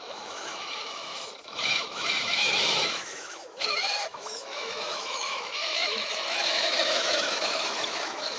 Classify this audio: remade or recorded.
remade